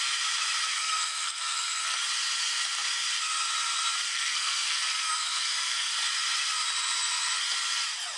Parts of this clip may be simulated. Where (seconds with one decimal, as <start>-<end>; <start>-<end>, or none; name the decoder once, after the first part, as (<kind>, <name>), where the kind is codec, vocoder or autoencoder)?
0.7-2.0 (codec, SNAC); 4.1-5.9